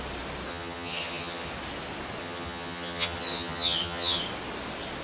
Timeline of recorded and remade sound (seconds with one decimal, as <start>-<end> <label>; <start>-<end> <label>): 0.0-0.5 recorded; 0.5-1.5 remade; 1.5-2.2 recorded; 2.2-4.2 remade; 4.2-5.0 recorded